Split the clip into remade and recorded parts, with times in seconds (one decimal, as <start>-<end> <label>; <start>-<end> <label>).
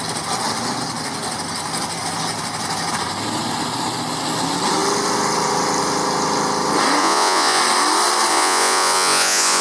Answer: 0.0-7.0 recorded; 7.0-7.6 remade; 7.6-8.3 recorded; 8.3-9.6 remade